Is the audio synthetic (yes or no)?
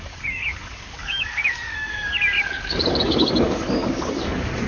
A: yes